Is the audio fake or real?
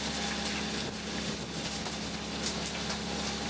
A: real